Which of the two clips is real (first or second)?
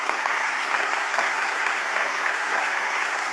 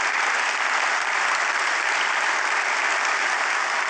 second